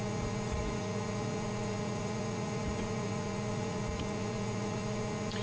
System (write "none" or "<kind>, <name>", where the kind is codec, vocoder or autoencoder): vocoder, Vocos